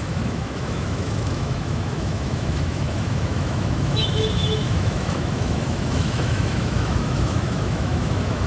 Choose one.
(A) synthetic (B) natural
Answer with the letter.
A